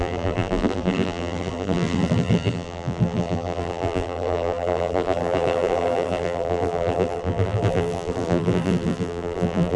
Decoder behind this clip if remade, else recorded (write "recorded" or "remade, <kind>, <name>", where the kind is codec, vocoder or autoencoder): remade, vocoder, BigVGAN v2